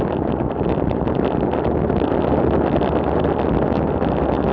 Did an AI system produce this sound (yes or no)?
no